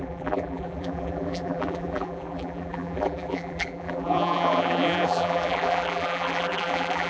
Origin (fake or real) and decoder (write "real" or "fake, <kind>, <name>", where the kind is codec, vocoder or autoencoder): fake, vocoder, BigVGAN v2